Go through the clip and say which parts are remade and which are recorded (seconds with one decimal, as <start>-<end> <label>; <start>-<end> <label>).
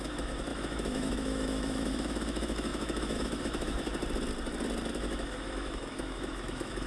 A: 0.0-3.9 remade; 3.9-4.9 recorded; 4.9-6.9 remade